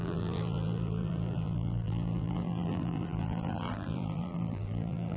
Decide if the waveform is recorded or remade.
remade